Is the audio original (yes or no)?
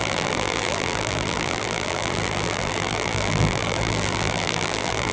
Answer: no